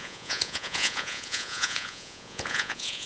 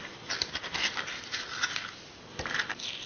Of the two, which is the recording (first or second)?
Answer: second